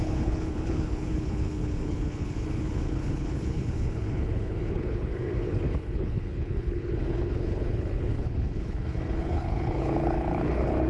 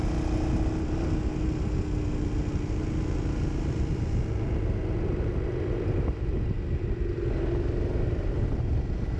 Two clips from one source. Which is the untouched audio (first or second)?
second